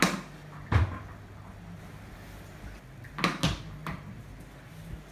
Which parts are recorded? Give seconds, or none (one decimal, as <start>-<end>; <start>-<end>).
0.0-3.8; 4.3-5.1